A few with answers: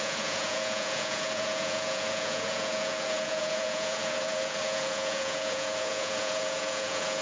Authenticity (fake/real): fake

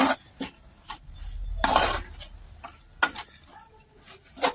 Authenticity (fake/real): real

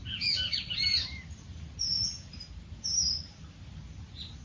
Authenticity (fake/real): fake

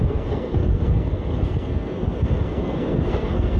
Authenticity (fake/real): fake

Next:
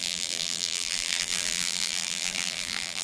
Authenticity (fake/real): fake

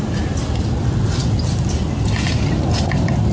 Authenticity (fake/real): real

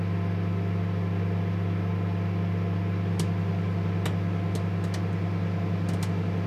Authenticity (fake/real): real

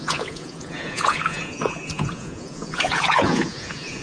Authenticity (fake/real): fake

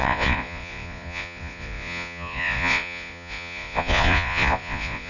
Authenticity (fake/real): fake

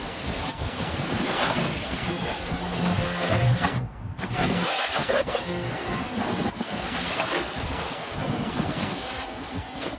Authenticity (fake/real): fake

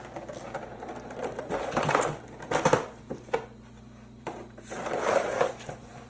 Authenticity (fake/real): fake